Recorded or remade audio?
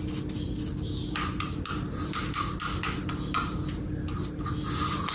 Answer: recorded